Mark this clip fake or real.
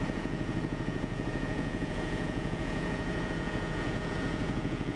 fake